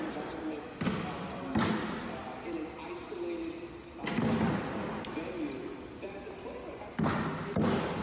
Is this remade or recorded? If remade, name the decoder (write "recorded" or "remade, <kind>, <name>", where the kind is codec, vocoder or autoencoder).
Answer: recorded